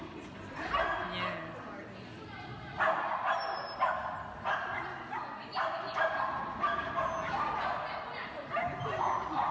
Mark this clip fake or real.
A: real